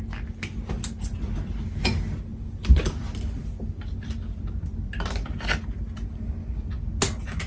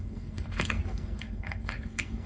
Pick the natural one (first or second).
first